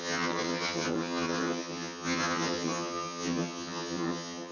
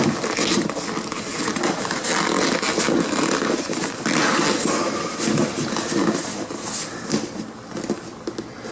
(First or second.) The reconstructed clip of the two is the first